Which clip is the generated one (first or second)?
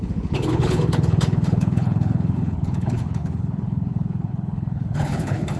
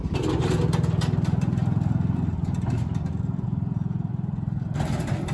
first